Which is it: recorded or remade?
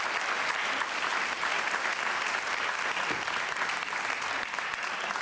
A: recorded